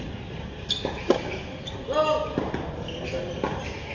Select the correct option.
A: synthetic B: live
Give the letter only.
B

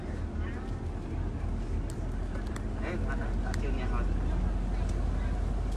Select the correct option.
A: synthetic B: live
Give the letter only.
B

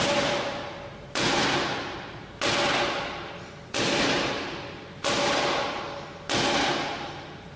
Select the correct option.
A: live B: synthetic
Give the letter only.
A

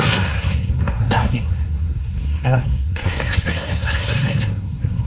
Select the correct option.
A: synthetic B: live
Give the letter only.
A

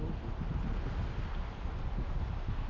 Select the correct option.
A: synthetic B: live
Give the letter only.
B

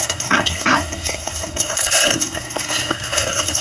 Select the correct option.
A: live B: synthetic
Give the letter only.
B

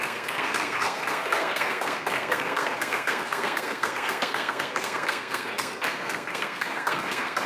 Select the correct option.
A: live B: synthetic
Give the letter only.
B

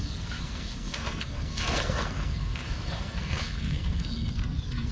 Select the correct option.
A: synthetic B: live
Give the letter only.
A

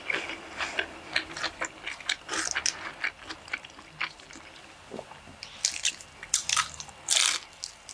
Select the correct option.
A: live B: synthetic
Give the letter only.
A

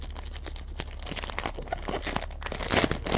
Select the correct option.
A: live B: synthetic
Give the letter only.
A